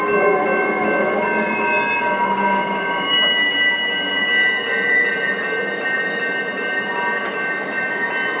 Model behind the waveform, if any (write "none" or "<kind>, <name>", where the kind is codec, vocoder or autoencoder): none